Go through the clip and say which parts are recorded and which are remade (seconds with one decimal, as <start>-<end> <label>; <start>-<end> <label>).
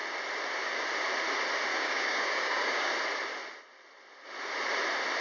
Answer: 0.0-1.7 recorded; 1.7-2.9 remade; 2.9-5.2 recorded